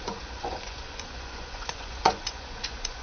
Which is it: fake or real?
fake